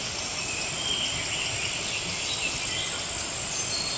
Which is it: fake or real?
real